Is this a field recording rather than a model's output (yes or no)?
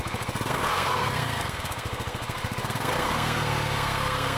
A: no